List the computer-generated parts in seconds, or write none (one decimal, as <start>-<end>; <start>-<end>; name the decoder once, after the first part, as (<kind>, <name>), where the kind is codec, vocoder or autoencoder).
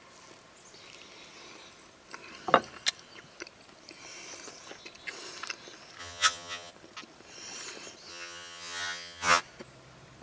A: 6.0-6.7 (vocoder, HiFi-GAN); 8.1-9.4